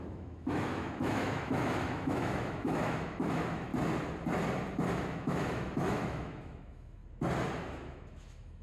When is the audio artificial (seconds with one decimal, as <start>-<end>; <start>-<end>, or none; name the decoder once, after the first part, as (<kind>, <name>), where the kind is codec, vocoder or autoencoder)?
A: 0.0-3.7 (autoencoder, DAC-VAE); 4.9-7.0; 7.6-8.6